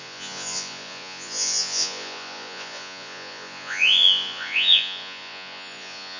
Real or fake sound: fake